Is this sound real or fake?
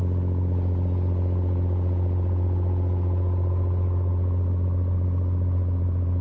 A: real